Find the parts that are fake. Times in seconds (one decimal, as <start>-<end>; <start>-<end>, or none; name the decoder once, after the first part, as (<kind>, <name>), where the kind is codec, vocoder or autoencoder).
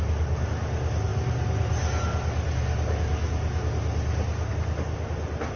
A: none